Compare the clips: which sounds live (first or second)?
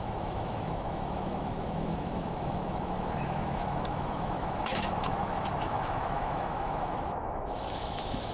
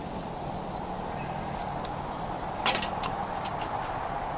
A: second